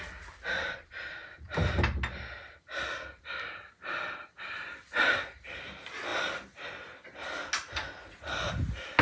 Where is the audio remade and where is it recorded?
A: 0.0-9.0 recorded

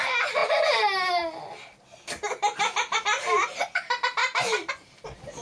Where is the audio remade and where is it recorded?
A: 0.0-5.4 recorded